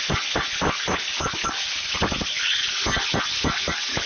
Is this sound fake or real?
real